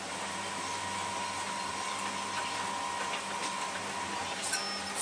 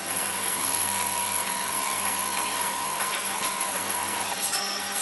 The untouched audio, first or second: first